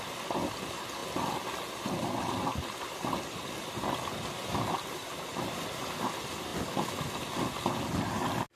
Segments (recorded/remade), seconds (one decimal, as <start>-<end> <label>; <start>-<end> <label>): 0.0-8.6 recorded

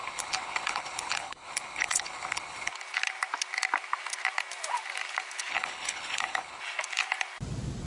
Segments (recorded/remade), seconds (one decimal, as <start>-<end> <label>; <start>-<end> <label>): 0.0-2.7 remade; 2.7-5.5 recorded; 5.5-6.6 remade; 6.6-7.9 recorded

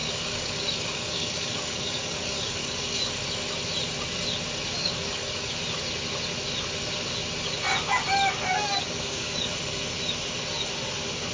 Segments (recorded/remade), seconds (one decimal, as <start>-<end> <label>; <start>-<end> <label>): 0.0-3.1 remade; 3.1-4.8 recorded; 4.8-5.5 remade; 5.5-8.4 recorded; 8.4-9.5 remade; 9.5-11.3 recorded

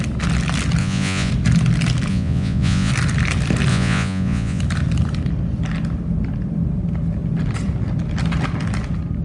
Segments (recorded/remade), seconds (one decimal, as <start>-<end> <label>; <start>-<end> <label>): 0.0-0.8 recorded; 0.8-1.3 remade; 1.3-2.1 recorded; 2.1-2.9 remade; 2.9-3.7 recorded; 3.7-4.6 remade; 4.6-9.2 recorded

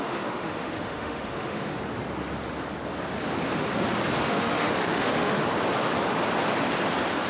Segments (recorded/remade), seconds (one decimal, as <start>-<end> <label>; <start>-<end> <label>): 0.0-1.8 remade; 1.8-4.2 recorded; 4.2-5.4 remade; 5.4-7.3 recorded

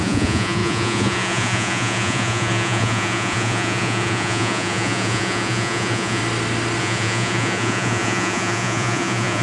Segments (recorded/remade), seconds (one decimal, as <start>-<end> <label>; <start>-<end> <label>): 0.0-6.2 remade; 6.2-6.8 recorded; 6.8-9.4 remade